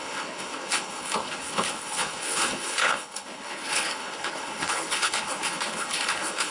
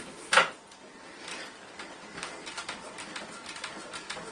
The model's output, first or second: first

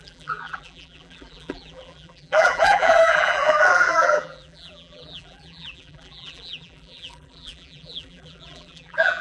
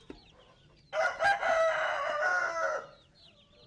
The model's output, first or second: first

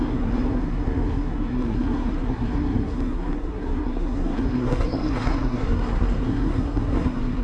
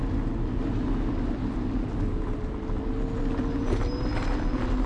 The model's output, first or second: first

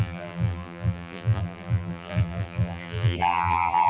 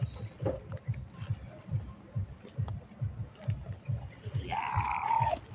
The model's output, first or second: first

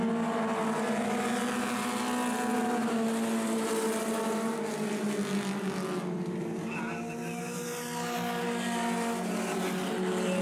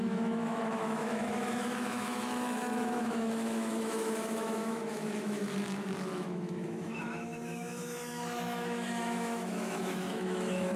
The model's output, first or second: second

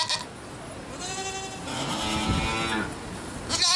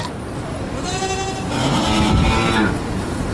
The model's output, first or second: second